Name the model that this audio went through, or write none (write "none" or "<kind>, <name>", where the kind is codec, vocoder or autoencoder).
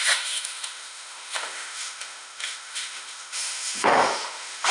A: autoencoder, DAC-VAE